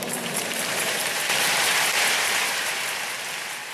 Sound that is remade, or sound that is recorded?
remade